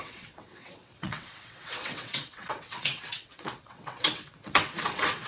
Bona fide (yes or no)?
no